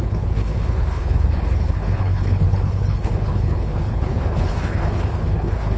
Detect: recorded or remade remade